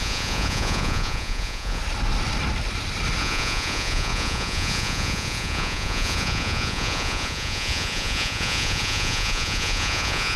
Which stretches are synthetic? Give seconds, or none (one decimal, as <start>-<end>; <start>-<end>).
0.0-1.8; 3.2-10.4